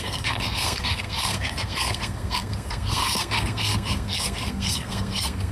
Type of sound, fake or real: fake